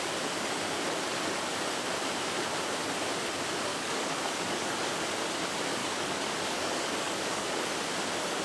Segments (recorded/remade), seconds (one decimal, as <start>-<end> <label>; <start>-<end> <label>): 0.0-3.7 recorded; 3.7-4.9 remade; 4.9-5.8 recorded; 5.8-7.7 remade; 7.7-8.4 recorded

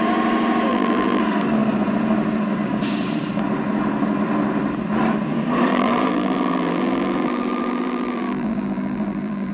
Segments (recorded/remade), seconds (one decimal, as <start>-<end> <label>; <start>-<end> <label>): 0.0-0.7 recorded; 0.7-1.2 remade; 1.2-5.7 recorded; 5.7-9.5 remade

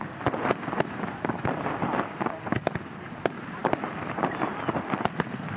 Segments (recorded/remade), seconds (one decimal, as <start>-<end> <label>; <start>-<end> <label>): 0.0-5.6 recorded

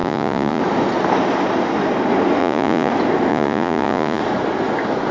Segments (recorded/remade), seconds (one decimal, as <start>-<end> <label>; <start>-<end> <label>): 0.0-0.6 remade; 0.6-2.4 recorded; 2.4-2.9 remade; 2.9-3.3 recorded; 3.3-4.2 remade; 4.2-5.1 recorded

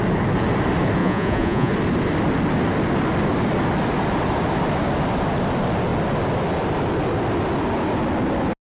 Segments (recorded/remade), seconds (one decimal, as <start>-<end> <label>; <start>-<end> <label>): 0.0-1.0 recorded; 1.0-1.7 remade; 1.7-8.7 recorded